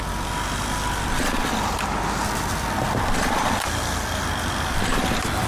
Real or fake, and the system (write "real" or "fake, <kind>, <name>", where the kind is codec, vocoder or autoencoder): real